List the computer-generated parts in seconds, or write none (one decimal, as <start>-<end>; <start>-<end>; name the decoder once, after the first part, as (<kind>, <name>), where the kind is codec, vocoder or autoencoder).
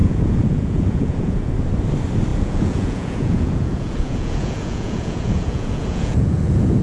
0.0-1.5 (vocoder, Vocos); 2.3-6.8